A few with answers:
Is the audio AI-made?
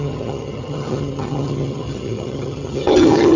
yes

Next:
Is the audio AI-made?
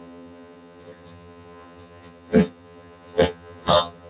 yes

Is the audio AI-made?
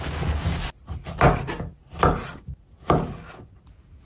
no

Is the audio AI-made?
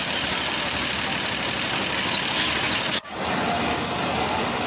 no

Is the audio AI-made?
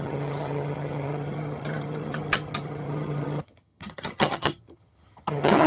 yes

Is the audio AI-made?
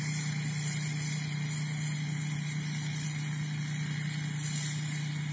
no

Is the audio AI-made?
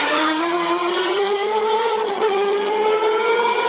yes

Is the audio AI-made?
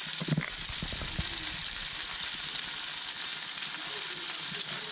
no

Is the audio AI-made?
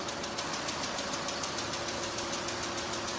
no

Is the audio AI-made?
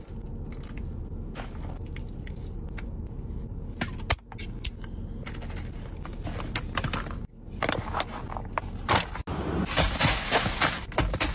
no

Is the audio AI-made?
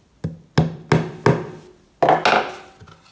no